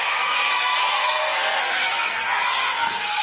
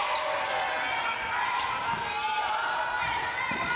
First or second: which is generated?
first